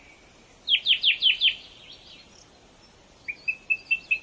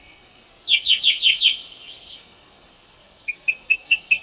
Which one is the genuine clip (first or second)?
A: first